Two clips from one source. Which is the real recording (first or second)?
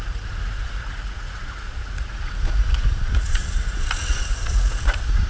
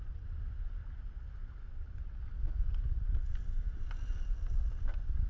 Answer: second